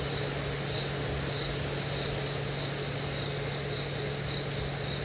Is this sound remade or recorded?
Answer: recorded